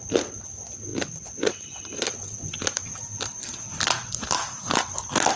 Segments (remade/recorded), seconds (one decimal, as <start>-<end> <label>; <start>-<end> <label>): 0.0-5.4 recorded